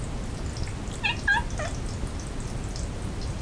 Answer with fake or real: real